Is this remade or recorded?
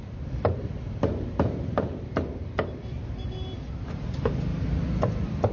recorded